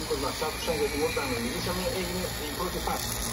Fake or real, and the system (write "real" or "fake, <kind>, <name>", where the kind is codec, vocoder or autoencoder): real